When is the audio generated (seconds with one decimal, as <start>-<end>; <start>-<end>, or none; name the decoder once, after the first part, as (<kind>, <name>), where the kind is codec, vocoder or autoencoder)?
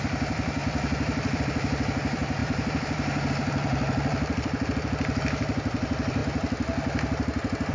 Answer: 0.0-6.2 (vocoder, BigVGAN v2)